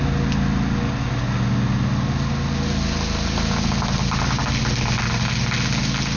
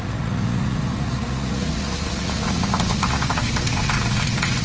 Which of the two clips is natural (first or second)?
first